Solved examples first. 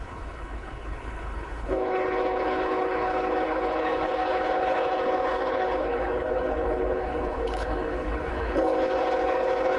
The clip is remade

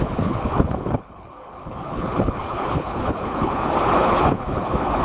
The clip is remade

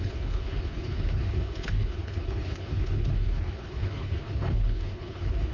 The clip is remade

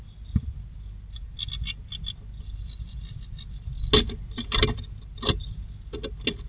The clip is recorded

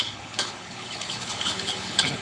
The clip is remade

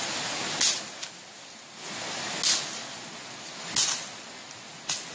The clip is recorded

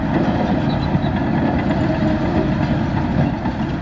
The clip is recorded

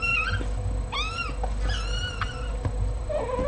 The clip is recorded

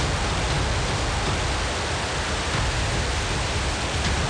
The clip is recorded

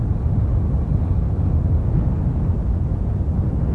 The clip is recorded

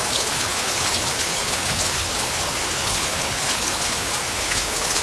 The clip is remade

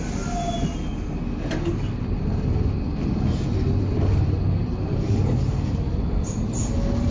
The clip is recorded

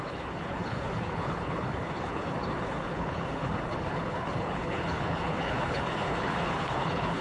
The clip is remade